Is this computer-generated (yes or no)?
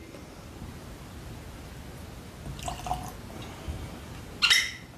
no